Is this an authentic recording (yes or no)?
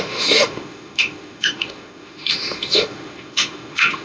no